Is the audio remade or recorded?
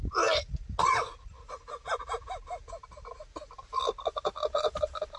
recorded